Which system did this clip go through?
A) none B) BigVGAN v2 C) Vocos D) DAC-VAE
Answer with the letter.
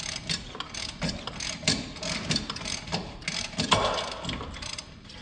A